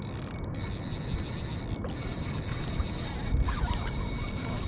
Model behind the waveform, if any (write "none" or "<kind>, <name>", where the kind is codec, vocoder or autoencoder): vocoder, BigVGAN v2